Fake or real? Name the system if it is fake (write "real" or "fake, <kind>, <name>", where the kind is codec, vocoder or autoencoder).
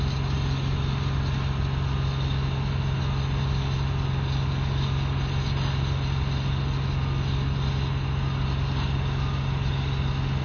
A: real